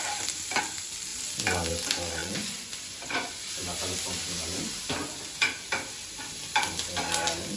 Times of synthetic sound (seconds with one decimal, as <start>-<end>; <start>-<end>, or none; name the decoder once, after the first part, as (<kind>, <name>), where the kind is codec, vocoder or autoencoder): 2.2-3.5 (vocoder, Vocos)